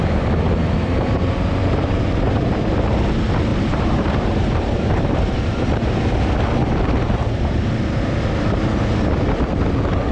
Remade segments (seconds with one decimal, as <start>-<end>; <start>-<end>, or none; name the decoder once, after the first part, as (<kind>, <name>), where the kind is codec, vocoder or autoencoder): 1.6-2.3 (vocoder, BigVGAN v2); 3.5-5.9; 7.2-8.2